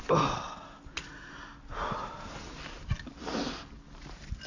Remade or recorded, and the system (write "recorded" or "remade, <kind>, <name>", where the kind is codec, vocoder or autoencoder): recorded